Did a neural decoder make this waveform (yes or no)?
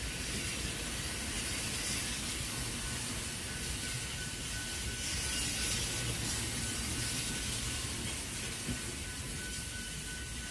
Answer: no